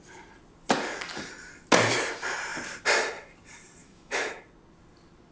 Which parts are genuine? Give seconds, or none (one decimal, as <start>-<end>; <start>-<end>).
0.0-3.8; 4.4-5.3